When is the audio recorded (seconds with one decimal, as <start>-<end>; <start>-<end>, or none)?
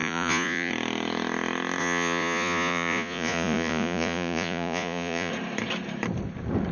0.7-1.8; 5.3-6.7